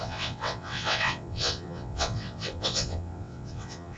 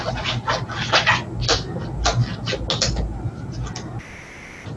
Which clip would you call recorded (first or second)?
second